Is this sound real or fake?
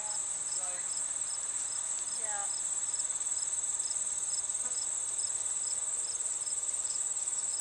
real